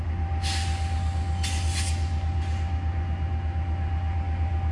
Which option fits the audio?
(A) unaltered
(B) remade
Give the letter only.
A